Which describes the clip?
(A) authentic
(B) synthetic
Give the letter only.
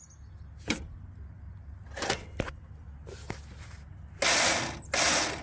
A